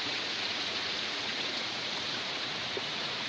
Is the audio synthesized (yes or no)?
yes